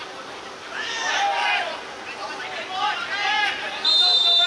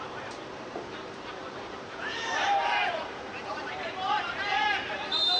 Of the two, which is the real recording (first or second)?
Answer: first